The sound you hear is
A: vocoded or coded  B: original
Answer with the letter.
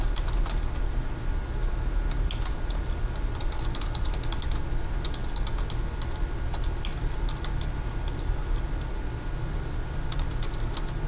B